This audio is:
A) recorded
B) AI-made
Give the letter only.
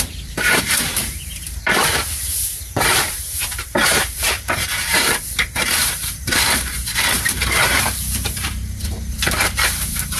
B